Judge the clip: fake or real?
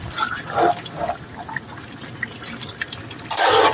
real